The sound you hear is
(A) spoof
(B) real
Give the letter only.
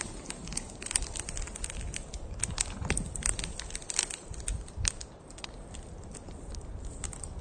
B